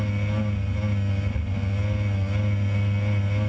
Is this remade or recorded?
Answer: recorded